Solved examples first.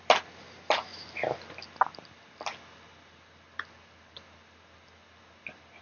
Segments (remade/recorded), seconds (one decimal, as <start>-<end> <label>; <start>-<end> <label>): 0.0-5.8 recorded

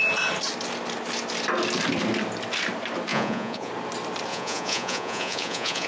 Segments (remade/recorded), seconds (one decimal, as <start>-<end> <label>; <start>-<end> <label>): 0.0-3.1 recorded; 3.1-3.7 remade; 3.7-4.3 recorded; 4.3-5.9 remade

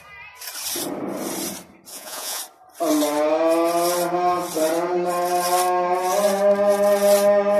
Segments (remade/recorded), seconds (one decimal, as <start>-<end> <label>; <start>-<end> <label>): 0.0-1.9 recorded; 1.9-2.4 remade; 2.4-7.6 recorded

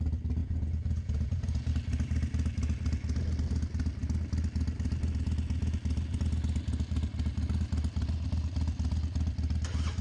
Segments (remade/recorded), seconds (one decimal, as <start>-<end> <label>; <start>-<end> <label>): 0.0-0.4 recorded; 0.4-1.7 remade; 1.7-10.0 recorded

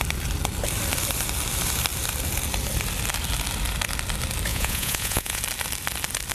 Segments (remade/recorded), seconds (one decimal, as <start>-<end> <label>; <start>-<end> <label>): 0.0-4.5 recorded; 4.5-5.4 remade; 5.4-6.3 recorded